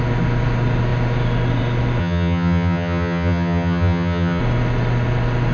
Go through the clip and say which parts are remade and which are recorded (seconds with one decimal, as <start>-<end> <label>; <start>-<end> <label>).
0.0-2.0 recorded; 2.0-4.4 remade; 4.4-5.5 recorded